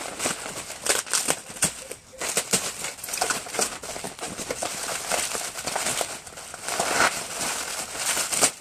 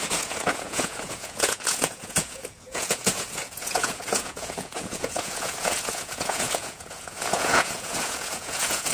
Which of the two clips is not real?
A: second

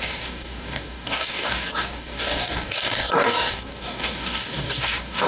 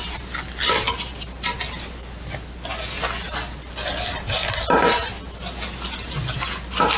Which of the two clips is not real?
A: first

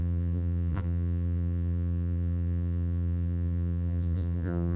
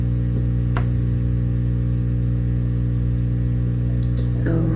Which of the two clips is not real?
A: first